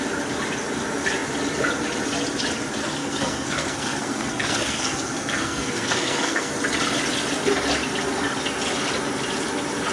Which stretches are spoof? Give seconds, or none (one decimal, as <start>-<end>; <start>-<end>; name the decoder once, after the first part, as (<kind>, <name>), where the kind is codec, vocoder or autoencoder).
3.0-6.5 (codec, SNAC)